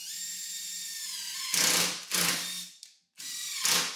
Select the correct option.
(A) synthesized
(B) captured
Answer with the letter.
B